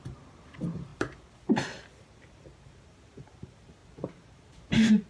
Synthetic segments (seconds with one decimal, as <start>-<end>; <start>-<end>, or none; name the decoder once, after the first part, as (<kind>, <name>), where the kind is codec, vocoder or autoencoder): 0.0-5.1 (vocoder, BigVGAN v2)